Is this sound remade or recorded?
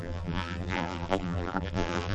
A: remade